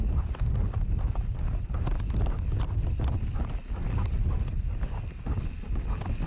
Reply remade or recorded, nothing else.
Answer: recorded